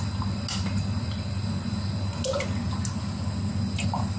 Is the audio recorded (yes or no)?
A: yes